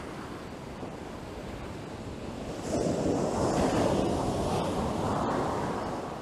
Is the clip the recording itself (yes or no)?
no